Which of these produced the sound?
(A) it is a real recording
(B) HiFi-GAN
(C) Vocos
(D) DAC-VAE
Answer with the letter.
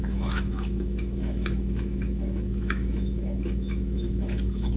D